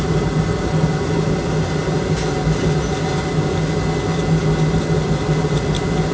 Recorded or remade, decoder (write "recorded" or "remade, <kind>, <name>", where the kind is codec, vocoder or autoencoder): recorded